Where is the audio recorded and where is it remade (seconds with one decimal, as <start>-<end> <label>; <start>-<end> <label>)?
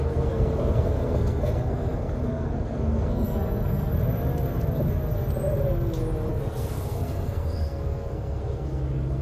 0.0-3.9 remade; 3.9-6.3 recorded; 6.3-9.2 remade